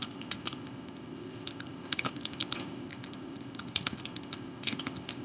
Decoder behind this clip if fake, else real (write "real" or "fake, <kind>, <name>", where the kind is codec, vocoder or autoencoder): fake, codec, ZipCodec